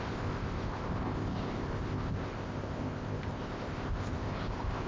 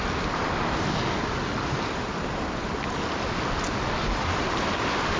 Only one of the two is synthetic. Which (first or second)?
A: first